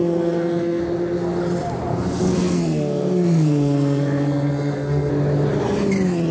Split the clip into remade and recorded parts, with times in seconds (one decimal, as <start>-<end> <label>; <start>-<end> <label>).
0.0-0.8 remade; 0.8-1.9 recorded; 1.9-5.1 remade; 5.1-6.3 recorded